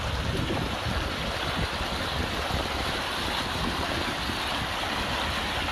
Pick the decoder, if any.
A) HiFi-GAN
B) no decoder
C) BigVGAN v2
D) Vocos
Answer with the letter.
B